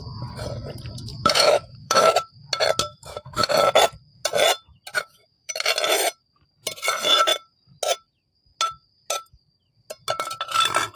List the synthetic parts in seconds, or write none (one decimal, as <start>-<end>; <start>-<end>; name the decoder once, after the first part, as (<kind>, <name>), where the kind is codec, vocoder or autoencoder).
1.1-2.1 (autoencoder, DAC-VAE); 2.9-3.5; 4.9-5.5